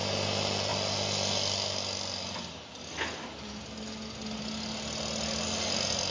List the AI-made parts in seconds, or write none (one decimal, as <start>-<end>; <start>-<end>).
none